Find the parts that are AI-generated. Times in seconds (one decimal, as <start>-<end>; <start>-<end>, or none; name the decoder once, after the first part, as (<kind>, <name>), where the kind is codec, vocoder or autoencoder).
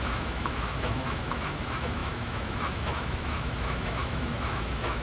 0.0-5.0 (autoencoder, DAC-VAE)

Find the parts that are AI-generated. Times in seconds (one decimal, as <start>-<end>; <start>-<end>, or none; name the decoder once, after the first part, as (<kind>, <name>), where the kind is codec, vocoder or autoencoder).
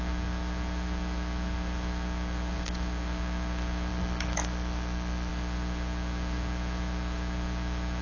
3.9-5.3 (autoencoder, DAC-VAE)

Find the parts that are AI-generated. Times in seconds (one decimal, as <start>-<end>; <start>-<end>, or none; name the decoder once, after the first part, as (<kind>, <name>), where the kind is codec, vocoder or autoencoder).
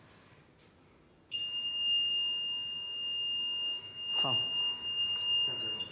2.1-4.6 (autoencoder, DAC-VAE)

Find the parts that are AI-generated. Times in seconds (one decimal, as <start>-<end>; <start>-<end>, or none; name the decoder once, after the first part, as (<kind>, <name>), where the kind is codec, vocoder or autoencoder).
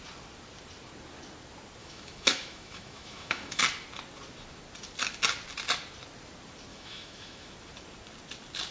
1.8-3.6 (autoencoder, DAC-VAE); 6.7-7.5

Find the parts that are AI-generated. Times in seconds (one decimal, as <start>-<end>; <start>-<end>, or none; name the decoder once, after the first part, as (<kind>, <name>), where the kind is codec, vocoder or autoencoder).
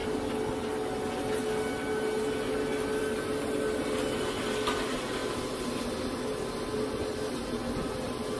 none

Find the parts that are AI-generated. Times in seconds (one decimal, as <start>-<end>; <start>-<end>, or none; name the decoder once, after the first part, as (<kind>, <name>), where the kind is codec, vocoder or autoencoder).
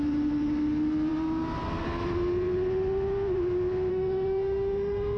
3.9-5.2 (autoencoder, DAC-VAE)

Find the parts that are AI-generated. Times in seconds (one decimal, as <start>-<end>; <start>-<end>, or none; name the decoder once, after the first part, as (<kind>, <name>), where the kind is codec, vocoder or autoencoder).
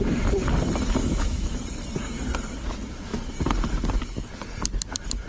1.0-1.6 (autoencoder, DAC-VAE)